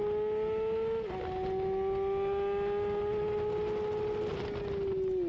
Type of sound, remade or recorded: recorded